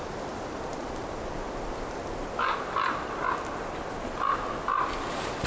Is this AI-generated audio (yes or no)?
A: no